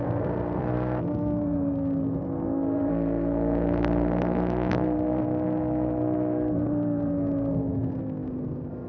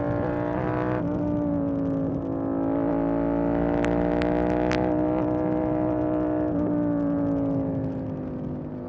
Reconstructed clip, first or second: first